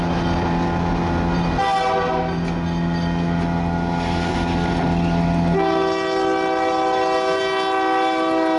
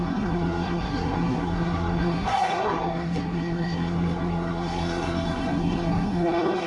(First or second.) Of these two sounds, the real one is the first